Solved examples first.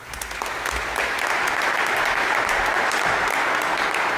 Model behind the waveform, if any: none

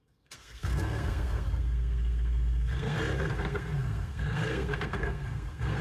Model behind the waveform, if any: codec, SNAC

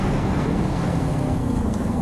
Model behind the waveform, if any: codec, SNAC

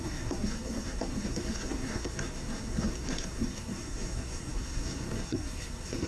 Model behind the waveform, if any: codec, SNAC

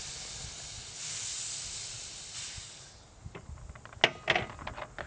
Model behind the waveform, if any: none